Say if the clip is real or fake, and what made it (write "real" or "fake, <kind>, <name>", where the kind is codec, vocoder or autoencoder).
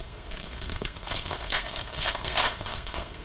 fake, codec, SNAC